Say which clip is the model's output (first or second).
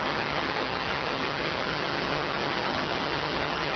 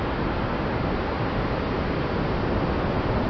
first